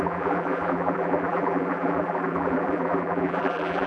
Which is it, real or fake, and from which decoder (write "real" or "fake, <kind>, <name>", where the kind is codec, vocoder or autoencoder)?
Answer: fake, vocoder, BigVGAN v2